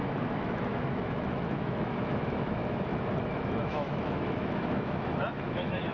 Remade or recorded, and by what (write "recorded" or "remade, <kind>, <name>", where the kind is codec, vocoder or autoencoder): remade, autoencoder, DAC-VAE